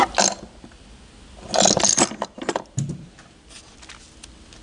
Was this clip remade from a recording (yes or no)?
no